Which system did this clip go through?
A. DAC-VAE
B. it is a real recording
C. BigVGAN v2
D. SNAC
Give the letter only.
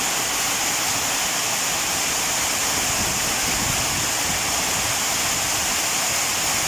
B